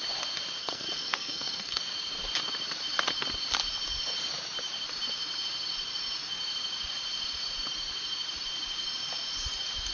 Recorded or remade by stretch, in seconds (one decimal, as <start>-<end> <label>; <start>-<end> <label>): 0.0-0.6 recorded; 0.6-1.8 remade; 1.8-9.9 recorded